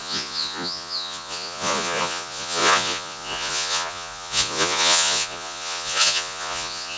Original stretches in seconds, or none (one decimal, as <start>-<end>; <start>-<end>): none